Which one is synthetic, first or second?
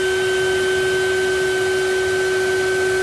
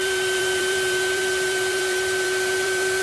second